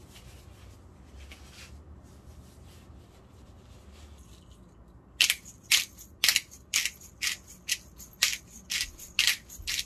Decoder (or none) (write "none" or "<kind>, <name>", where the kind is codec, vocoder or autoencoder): none